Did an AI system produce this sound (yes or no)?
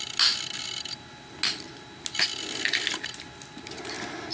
no